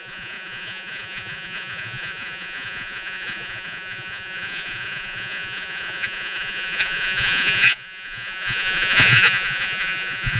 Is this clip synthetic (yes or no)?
yes